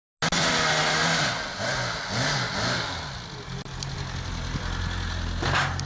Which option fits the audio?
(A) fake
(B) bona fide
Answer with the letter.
B